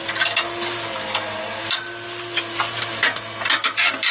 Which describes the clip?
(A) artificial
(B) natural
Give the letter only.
B